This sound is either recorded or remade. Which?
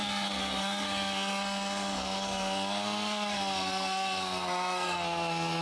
remade